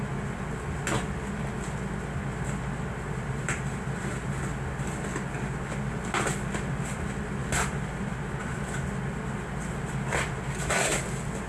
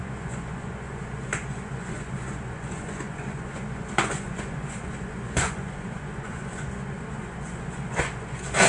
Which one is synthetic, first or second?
second